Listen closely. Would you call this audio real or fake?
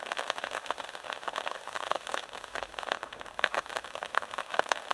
fake